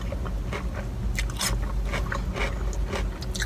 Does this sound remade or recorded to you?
recorded